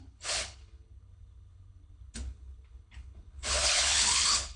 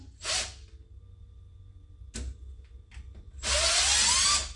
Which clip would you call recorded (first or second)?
second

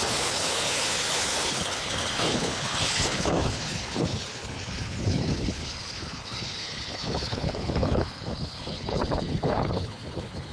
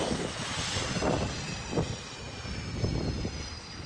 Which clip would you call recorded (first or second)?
second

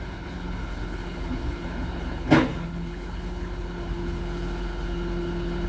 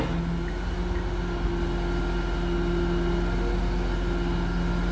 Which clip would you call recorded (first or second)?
second